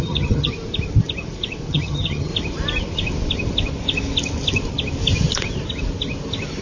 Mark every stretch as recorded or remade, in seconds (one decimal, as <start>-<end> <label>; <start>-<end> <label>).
0.0-0.5 remade; 0.5-1.7 recorded; 1.7-2.3 remade; 2.3-6.6 recorded